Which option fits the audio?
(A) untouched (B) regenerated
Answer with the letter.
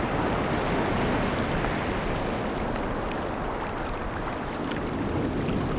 A